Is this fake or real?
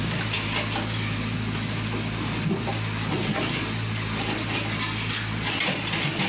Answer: real